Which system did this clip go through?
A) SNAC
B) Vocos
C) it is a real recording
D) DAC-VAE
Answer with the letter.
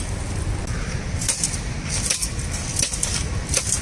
C